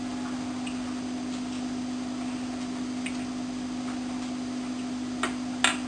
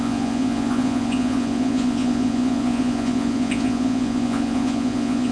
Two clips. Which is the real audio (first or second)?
first